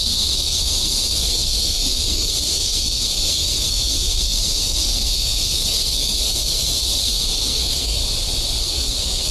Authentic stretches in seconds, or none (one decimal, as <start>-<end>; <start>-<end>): 8.0-8.6

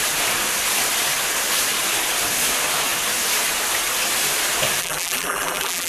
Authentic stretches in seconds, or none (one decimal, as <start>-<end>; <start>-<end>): 0.0-4.8

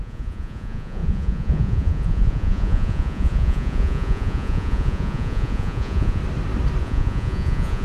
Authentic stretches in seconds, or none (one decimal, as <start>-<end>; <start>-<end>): 6.2-6.8

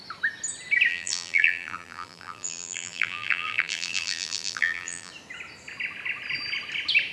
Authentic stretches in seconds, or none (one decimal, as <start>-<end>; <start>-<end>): 0.0-0.9; 5.1-7.1

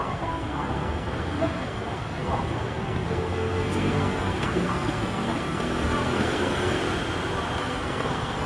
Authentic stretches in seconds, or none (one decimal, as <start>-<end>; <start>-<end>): 6.8-7.6